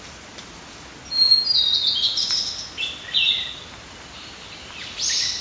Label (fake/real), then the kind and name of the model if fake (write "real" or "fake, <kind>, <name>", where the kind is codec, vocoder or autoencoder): real